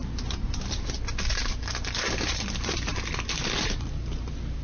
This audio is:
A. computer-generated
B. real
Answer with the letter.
A